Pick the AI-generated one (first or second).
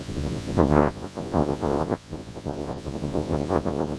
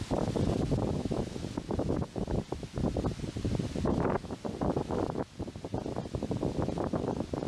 first